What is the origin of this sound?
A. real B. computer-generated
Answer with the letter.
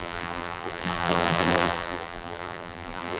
B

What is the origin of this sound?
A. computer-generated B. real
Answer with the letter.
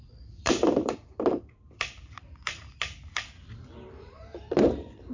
A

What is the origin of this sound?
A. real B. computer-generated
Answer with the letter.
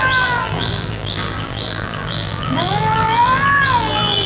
B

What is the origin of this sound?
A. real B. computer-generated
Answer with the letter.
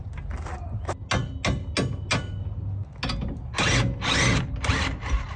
A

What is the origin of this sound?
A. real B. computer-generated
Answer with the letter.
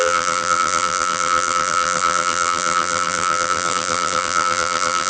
B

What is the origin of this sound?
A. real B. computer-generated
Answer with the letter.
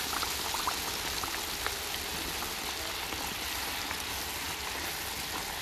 A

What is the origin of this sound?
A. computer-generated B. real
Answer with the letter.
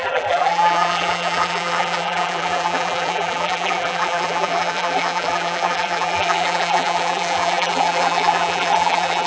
A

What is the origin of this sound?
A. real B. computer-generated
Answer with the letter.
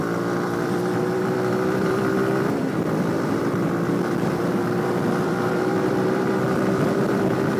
B